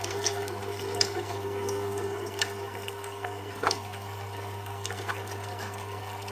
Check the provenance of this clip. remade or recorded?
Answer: remade